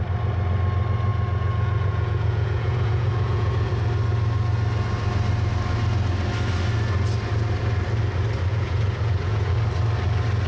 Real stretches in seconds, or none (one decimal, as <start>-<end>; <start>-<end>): 0.0-1.1; 3.7-8.5; 9.5-10.5